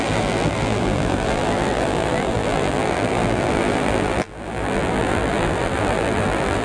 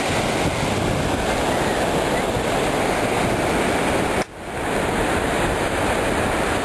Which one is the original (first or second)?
second